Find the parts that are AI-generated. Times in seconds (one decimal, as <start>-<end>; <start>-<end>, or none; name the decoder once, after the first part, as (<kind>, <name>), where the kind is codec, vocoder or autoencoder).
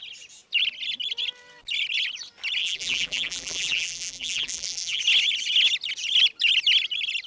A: 2.6-5.0 (vocoder, BigVGAN v2)